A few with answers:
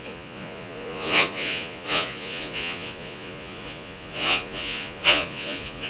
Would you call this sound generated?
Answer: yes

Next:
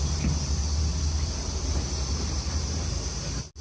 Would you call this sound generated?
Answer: no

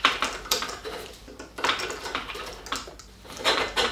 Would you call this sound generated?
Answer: no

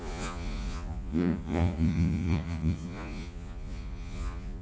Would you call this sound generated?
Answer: yes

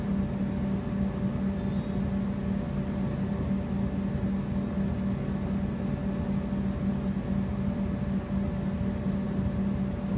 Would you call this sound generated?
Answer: no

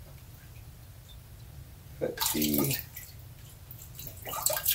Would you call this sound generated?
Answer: no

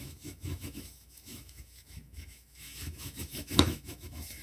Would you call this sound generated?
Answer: yes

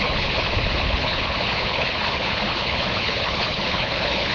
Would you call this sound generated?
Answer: yes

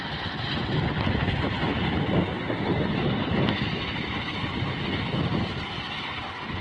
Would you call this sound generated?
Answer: no